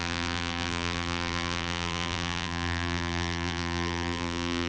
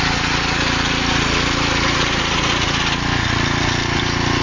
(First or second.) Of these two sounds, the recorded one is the second